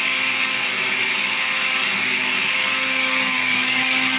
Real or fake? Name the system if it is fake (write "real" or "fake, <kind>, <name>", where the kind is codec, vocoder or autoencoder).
fake, codec, DAC